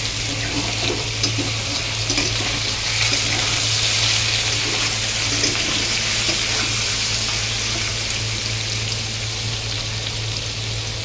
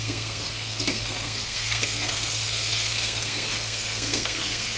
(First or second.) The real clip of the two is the first